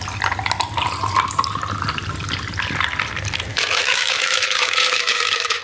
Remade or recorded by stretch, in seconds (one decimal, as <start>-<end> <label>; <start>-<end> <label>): 0.0-3.5 recorded; 3.5-5.6 remade